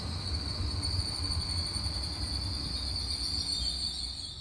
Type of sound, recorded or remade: recorded